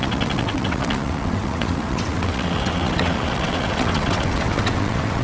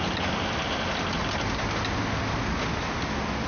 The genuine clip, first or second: second